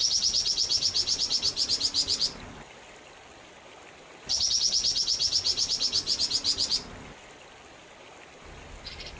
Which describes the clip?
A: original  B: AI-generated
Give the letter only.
A